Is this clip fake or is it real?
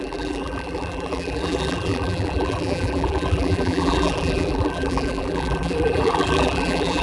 fake